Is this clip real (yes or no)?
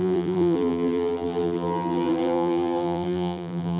no